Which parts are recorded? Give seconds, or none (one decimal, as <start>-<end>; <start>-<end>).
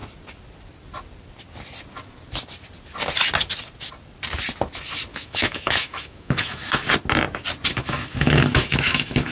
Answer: 0.0-5.1; 6.9-7.7